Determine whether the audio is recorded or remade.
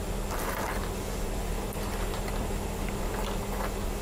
recorded